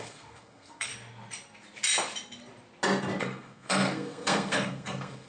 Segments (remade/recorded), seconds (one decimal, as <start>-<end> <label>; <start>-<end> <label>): 0.0-0.9 remade; 0.9-3.2 recorded; 3.2-5.3 remade